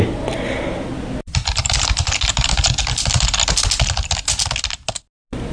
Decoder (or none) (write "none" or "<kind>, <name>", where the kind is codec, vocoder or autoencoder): none